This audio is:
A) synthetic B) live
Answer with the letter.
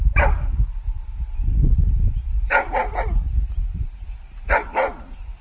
B